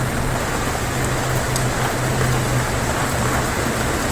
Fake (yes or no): no